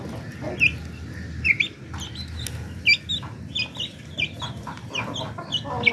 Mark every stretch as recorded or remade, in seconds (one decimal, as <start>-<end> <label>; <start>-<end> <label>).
0.0-5.9 recorded

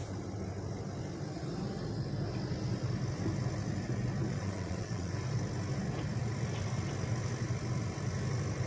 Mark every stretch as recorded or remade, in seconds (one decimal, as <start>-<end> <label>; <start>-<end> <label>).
0.0-4.3 recorded; 4.3-5.1 remade; 5.1-8.7 recorded

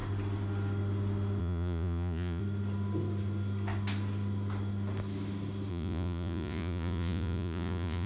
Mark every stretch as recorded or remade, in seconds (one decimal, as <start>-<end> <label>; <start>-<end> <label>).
0.0-1.4 recorded; 1.4-2.4 remade; 2.4-5.7 recorded; 5.7-8.1 remade

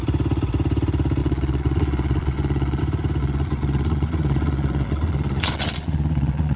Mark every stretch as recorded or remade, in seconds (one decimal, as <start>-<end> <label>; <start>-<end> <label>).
0.0-1.2 recorded; 1.2-2.8 remade; 2.8-3.2 recorded; 3.2-6.6 remade

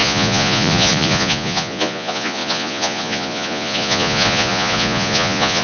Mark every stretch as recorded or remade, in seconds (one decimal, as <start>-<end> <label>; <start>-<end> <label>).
0.0-5.6 remade